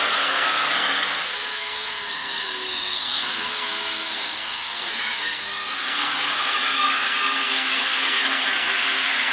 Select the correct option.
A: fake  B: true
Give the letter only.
A